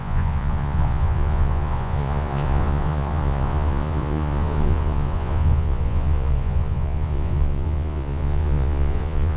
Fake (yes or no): yes